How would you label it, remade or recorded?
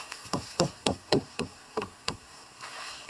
remade